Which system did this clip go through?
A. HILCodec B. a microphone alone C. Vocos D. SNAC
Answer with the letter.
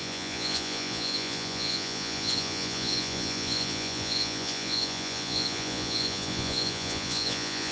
C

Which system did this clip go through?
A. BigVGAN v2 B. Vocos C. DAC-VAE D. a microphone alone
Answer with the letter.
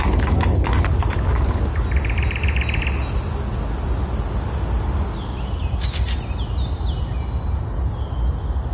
D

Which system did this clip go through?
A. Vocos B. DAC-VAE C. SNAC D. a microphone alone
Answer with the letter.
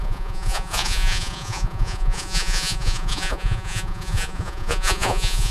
A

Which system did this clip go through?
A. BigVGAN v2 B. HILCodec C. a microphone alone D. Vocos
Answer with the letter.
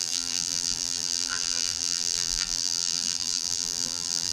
A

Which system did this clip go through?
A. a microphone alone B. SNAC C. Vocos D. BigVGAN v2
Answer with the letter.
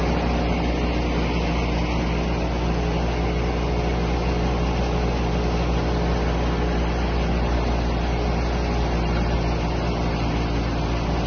A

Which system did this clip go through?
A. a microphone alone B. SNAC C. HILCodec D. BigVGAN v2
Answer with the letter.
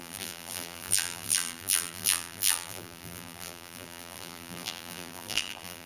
D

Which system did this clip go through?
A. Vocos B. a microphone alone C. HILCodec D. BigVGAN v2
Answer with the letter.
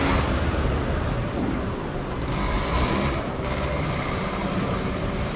D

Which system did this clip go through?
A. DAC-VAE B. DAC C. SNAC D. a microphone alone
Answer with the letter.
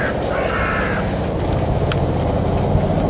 D